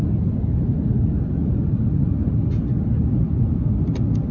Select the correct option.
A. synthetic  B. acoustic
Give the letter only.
B